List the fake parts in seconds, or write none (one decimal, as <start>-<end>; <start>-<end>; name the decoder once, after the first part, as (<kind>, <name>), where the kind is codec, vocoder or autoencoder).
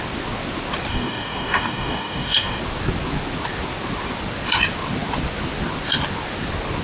0.9-2.6 (codec, DAC)